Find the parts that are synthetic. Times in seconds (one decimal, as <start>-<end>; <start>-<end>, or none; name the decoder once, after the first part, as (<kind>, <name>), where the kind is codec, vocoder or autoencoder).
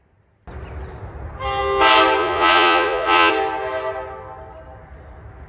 2.2-3.3 (vocoder, Vocos)